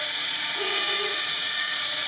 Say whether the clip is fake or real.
fake